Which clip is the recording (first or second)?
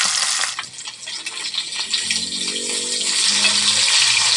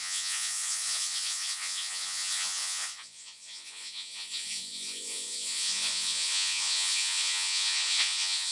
first